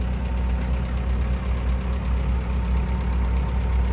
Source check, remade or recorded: recorded